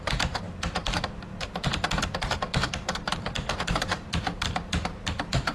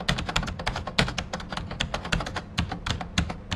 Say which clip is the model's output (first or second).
first